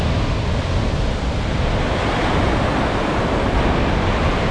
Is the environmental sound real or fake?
real